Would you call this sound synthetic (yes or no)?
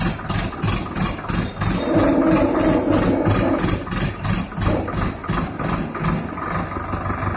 no